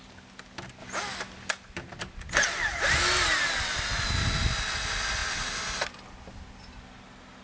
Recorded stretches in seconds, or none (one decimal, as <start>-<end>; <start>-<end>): 0.0-7.4